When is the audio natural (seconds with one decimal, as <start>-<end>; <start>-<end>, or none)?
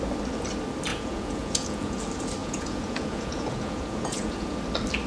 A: 0.0-0.9; 2.0-2.4; 4.6-5.1